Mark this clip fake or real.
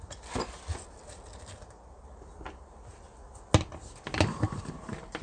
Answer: real